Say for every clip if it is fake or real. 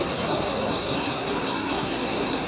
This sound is fake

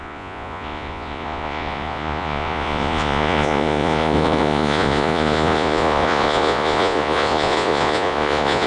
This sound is fake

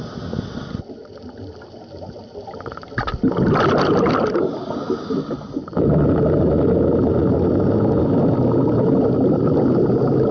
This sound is real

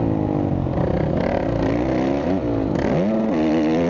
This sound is real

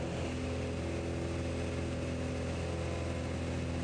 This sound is real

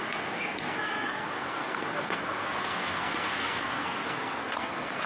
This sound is fake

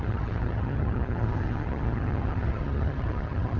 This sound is fake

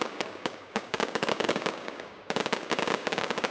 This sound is fake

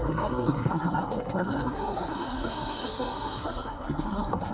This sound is fake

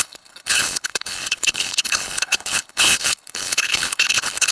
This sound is fake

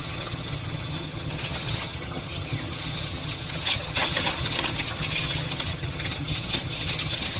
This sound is fake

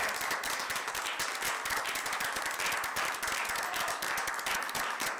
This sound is real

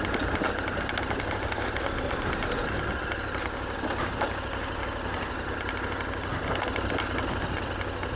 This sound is real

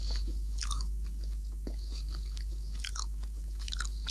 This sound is fake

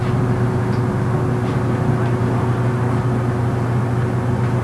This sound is real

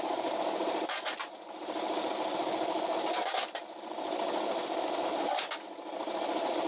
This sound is real